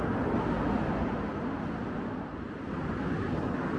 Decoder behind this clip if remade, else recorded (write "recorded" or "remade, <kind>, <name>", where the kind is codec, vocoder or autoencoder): recorded